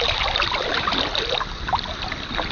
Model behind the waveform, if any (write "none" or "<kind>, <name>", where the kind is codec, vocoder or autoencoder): none